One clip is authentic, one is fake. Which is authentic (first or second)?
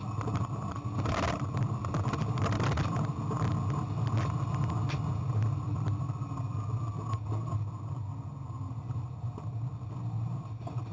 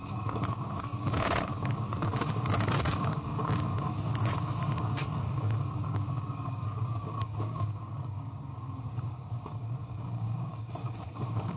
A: first